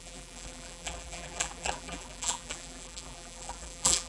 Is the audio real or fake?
fake